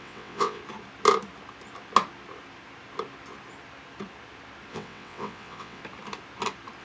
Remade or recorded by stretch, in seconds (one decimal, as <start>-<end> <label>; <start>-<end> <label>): 0.0-0.6 remade; 0.6-4.7 recorded; 4.7-5.8 remade; 5.8-6.8 recorded